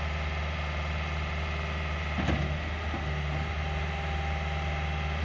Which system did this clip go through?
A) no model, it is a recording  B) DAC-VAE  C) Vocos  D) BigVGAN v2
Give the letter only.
A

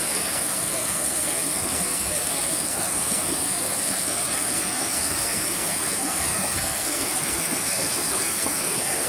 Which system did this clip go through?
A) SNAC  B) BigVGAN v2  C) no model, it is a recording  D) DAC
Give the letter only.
A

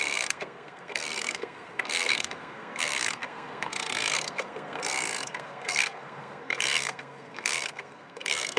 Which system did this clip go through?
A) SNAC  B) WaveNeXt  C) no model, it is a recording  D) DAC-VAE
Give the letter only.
A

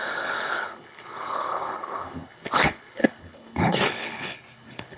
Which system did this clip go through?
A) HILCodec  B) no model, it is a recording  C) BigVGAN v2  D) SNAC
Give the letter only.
A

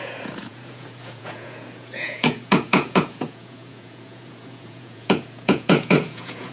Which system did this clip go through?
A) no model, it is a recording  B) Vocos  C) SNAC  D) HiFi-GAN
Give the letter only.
B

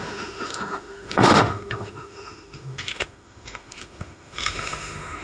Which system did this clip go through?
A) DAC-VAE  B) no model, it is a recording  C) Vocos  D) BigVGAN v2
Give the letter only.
A